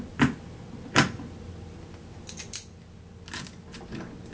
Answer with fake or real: real